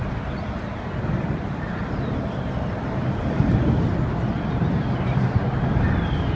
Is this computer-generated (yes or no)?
no